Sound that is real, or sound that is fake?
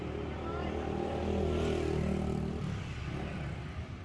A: real